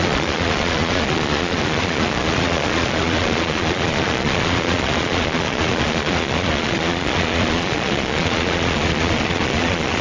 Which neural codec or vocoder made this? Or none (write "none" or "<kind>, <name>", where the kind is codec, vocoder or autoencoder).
vocoder, Vocos